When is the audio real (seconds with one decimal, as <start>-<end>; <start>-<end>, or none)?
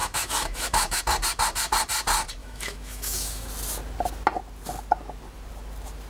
1.0-2.4; 3.5-6.1